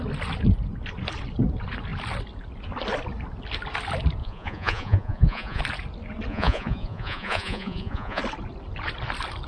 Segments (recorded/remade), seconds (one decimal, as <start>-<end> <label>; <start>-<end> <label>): 0.0-4.2 recorded; 4.2-5.6 remade; 5.6-6.3 recorded; 6.3-8.2 remade; 8.2-9.5 recorded